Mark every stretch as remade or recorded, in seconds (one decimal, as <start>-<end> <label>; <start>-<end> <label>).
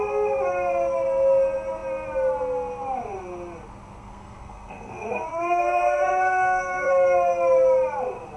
0.0-4.0 recorded; 4.0-6.9 remade; 6.9-8.4 recorded